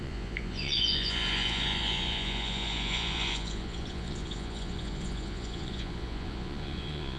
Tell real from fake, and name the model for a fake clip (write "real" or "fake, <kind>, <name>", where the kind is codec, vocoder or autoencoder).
fake, vocoder, Vocos